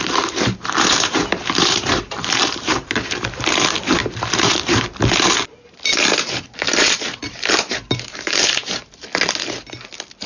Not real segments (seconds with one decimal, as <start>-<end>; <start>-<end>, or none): 0.0-9.1